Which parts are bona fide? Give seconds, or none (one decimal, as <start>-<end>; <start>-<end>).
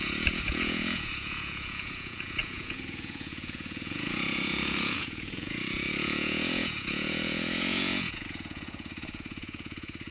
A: none